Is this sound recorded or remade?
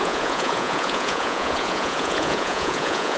remade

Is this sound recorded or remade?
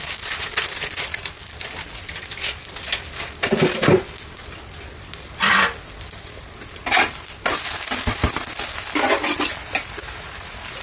recorded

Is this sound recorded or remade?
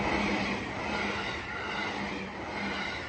recorded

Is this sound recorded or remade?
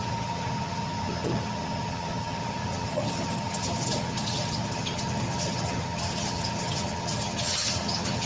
remade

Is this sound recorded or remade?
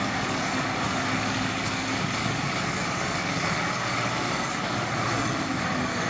remade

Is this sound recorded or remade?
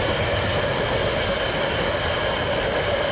recorded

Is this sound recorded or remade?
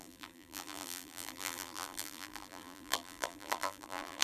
remade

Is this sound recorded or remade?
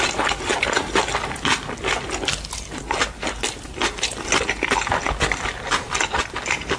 recorded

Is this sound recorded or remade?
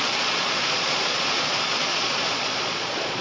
remade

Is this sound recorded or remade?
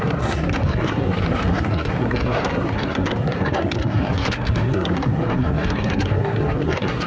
remade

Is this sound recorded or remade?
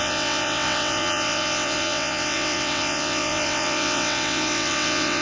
remade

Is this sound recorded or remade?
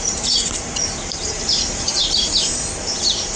remade